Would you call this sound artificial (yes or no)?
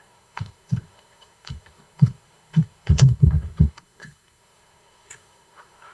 yes